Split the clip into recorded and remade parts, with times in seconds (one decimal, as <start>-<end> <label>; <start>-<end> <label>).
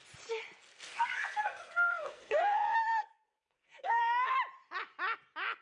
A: 0.0-0.6 recorded; 0.6-4.0 remade; 4.0-5.6 recorded